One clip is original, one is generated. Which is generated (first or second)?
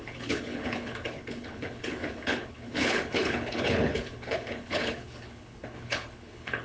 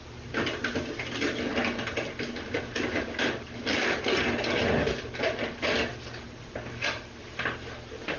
first